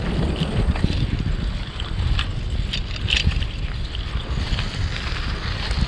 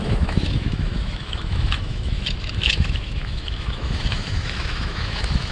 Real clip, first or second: first